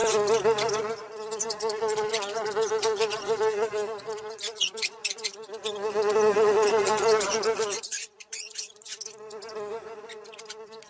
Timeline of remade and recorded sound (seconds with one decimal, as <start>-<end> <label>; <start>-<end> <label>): 0.0-0.8 recorded; 0.8-8.9 remade; 8.9-10.5 recorded; 10.5-10.9 remade